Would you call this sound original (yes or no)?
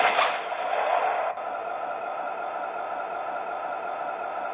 yes